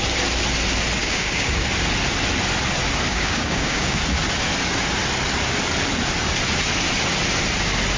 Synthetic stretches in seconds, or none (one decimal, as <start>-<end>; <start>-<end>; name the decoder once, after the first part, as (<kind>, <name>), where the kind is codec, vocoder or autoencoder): 1.0-1.6 (codec, DAC); 3.1-4.0